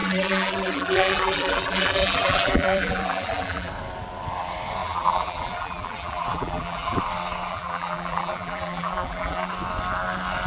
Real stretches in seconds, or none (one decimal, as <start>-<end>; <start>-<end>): 3.7-4.8; 7.0-7.5; 9.5-10.5